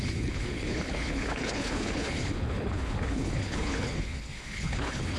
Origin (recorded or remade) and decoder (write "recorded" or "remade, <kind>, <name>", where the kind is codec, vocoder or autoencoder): remade, codec, HILCodec